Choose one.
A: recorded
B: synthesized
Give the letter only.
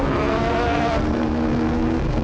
B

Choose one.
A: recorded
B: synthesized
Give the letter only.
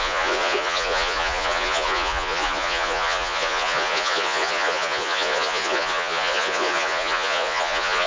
B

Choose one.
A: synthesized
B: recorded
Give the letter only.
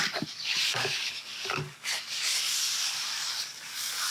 A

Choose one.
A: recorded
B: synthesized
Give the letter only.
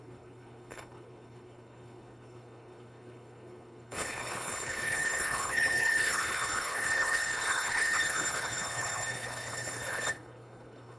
B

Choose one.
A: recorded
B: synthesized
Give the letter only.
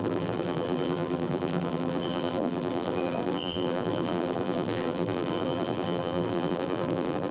B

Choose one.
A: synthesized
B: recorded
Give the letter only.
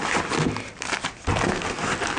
B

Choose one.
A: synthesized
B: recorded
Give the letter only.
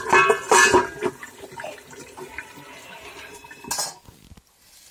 B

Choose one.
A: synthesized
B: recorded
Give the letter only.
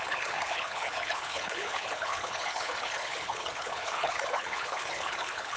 A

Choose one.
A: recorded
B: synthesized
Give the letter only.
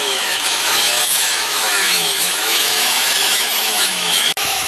B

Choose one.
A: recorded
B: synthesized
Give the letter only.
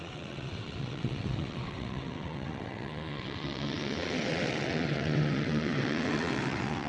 B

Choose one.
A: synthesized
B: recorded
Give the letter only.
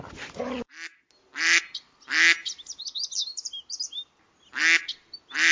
B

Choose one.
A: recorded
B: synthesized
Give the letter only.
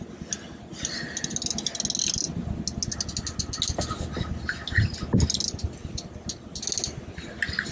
A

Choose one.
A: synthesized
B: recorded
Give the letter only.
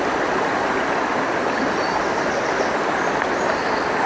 B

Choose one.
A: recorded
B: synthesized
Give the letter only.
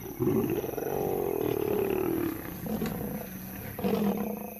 A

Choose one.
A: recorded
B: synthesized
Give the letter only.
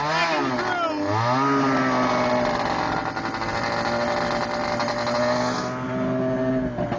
A